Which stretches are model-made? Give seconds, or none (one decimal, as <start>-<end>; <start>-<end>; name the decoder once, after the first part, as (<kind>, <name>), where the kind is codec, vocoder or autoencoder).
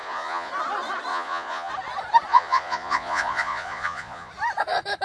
0.0-0.5 (vocoder, Vocos); 1.1-1.7; 2.3-4.3